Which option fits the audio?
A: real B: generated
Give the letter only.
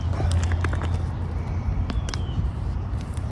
A